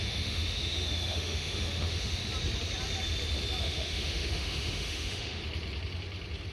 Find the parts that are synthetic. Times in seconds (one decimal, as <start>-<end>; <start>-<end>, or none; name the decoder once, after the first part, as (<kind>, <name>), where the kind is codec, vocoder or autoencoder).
0.0-2.2 (autoencoder, DAC-VAE); 3.6-5.4